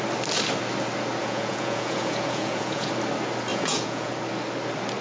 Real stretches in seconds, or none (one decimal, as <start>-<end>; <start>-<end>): 0.0-1.2; 2.9-3.5; 4.1-5.0